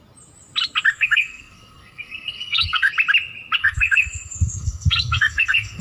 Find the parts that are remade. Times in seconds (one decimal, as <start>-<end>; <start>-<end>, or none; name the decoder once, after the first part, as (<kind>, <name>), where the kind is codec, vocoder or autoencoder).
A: 0.9-2.9 (codec, SNAC); 3.6-5.8